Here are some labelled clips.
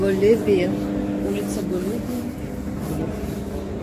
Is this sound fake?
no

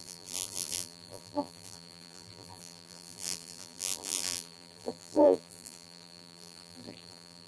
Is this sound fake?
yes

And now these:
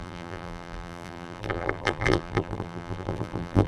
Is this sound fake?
yes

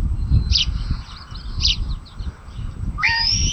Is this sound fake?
yes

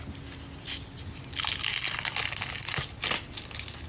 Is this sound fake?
no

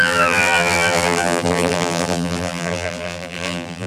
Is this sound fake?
yes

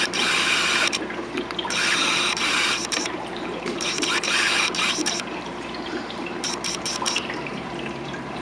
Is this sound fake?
yes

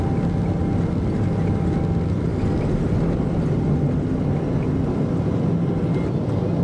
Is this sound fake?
no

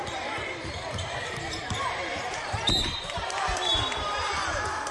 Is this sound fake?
yes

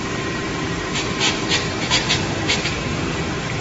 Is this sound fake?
yes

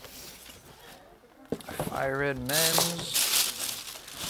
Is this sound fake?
no